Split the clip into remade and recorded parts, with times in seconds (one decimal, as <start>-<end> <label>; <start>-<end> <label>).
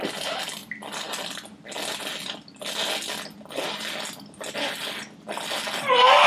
0.0-6.3 recorded